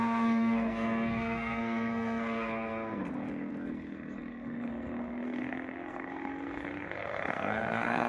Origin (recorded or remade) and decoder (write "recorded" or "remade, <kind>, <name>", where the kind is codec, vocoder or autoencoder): remade, codec, SNAC